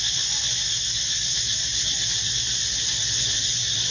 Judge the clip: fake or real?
real